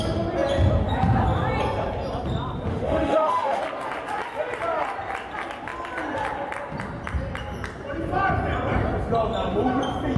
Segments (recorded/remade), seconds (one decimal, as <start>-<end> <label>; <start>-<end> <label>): 0.0-2.7 recorded; 2.7-3.6 remade; 3.6-10.2 recorded